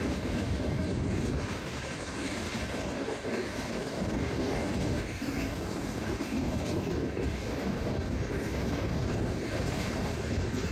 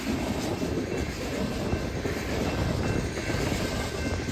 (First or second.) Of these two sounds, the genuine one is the second